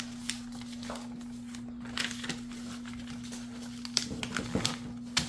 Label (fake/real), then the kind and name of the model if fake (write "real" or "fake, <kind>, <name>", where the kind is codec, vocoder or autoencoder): real